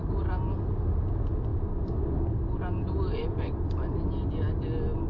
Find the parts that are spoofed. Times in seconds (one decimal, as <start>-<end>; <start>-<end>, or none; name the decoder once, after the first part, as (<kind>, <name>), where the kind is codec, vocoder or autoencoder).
none